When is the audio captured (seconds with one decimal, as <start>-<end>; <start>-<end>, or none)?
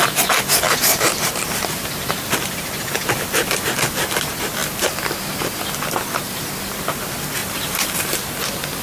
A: 0.0-0.9; 3.7-7.4; 8.3-8.8